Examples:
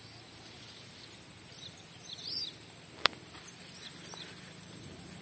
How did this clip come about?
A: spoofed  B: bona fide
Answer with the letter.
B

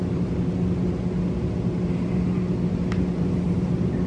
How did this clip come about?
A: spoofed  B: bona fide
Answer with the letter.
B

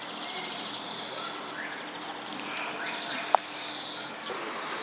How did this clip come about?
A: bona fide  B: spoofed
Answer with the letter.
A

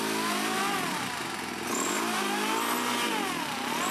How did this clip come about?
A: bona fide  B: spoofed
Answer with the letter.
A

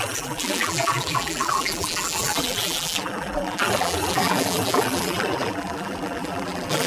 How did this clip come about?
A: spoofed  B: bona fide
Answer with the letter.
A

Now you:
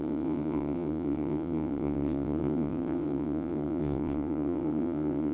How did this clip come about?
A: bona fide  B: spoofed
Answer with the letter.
B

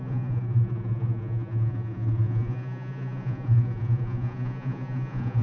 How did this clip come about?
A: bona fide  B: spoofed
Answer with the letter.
B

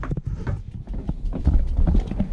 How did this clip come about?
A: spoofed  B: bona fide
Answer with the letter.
B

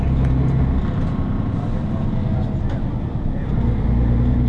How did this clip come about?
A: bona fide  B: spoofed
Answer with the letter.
A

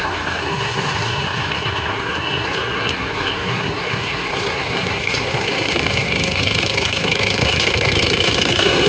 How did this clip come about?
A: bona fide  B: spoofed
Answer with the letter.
B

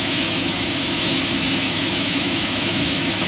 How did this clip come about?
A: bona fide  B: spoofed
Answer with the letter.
B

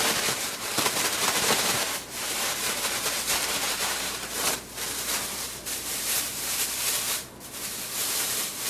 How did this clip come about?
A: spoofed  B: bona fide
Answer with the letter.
A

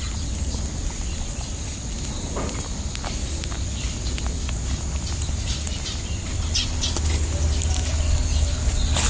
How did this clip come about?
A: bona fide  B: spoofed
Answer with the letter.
A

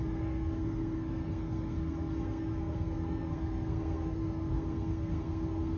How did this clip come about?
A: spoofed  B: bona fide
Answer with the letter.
A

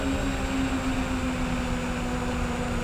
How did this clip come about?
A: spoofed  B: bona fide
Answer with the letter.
B